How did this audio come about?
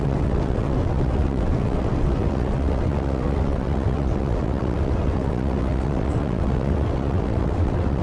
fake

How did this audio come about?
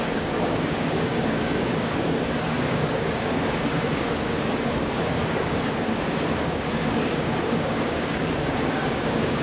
fake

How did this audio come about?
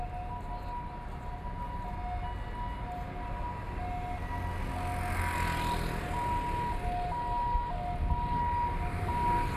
real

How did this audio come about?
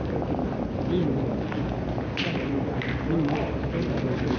real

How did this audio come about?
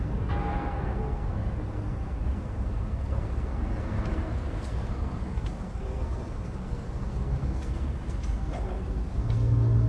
fake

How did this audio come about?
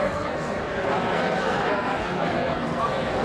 fake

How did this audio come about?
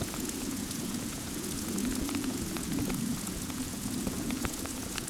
fake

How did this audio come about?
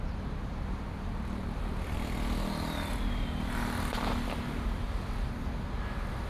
real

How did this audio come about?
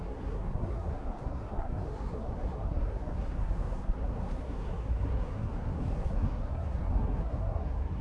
fake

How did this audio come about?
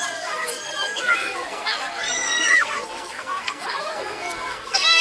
fake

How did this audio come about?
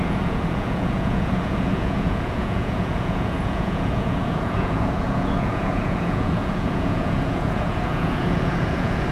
fake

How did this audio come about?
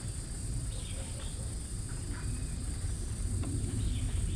real